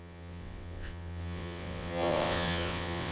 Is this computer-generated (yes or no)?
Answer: yes